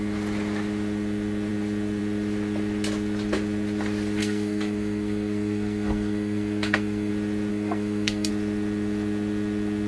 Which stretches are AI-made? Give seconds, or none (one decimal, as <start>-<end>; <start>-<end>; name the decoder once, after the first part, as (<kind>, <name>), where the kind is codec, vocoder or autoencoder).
4.2-7.1 (codec, SNAC); 7.5-8.3